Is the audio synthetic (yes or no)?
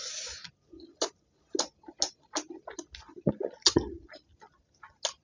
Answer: no